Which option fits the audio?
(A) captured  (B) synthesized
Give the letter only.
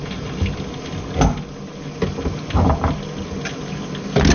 A